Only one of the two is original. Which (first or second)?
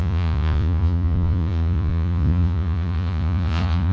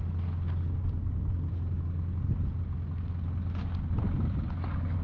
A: second